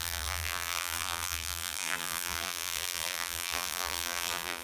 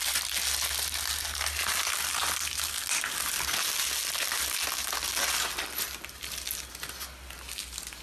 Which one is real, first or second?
second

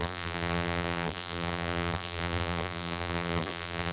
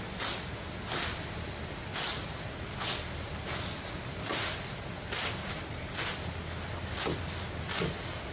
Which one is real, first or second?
second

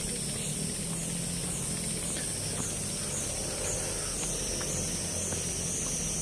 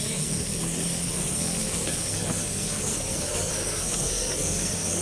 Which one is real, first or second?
first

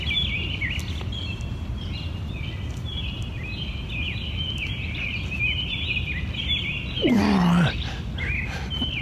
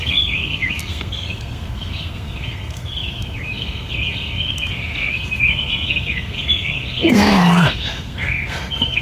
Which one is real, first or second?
first